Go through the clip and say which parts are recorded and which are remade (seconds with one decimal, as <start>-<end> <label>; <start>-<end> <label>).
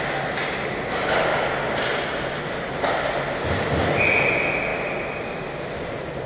0.0-6.3 recorded